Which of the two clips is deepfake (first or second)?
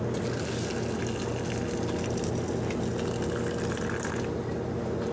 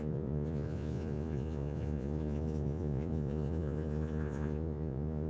second